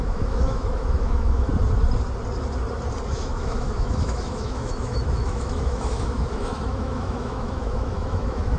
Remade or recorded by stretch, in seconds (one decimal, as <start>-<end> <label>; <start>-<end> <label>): 0.0-1.5 remade; 1.5-3.1 recorded; 3.1-8.6 remade